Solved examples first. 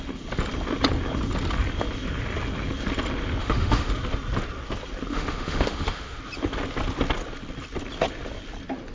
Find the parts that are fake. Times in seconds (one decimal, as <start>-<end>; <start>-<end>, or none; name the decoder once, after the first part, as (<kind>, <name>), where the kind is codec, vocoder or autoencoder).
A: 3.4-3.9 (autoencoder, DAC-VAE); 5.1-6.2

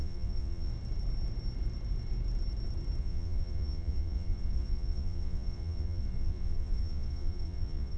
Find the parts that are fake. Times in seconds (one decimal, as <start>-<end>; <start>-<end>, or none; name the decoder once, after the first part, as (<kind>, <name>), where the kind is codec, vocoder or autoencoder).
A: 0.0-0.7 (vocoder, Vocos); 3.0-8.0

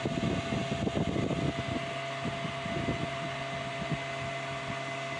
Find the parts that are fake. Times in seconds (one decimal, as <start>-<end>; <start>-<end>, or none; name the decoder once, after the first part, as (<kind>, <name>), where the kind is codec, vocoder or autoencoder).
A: none

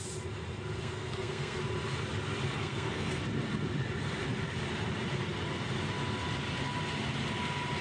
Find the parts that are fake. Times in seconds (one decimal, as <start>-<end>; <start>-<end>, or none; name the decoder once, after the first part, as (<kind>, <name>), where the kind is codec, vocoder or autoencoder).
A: 0.8-1.6 (codec, SNAC); 2.6-3.2